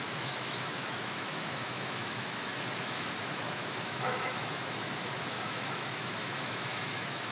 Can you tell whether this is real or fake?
fake